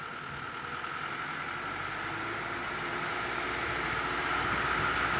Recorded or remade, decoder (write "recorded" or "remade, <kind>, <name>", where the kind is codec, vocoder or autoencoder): recorded